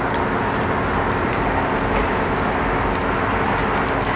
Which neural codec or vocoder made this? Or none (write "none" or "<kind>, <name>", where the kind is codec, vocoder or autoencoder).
none